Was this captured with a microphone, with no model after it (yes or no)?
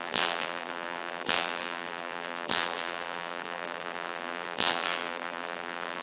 no